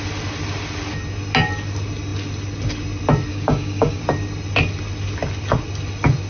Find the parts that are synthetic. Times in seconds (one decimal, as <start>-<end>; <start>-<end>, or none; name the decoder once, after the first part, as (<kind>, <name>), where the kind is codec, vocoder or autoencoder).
3.3-4.0 (codec, DAC)